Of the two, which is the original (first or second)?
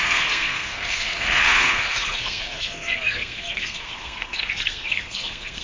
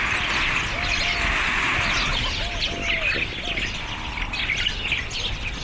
second